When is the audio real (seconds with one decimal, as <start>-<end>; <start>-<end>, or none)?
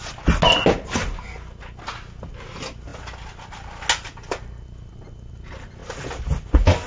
0.0-6.9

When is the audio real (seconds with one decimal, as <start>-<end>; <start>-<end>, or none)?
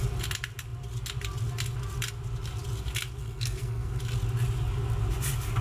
0.0-3.2; 4.0-5.6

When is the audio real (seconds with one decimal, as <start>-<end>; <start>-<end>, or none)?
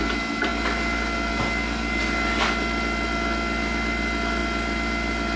0.0-5.4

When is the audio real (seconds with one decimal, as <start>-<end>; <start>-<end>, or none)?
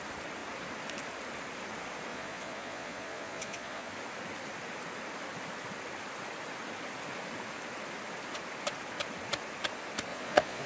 0.0-2.1; 3.9-10.1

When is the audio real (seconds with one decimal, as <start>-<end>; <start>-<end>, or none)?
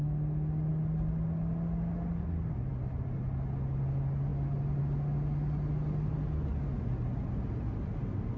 0.0-8.4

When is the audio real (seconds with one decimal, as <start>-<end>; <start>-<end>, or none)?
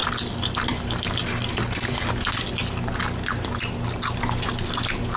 0.0-5.2